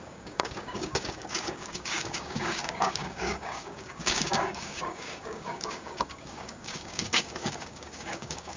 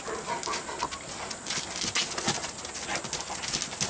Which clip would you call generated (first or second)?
first